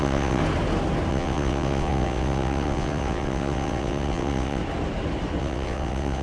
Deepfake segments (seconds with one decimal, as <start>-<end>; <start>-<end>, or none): 0.0-0.4; 1.1-4.6; 5.4-6.2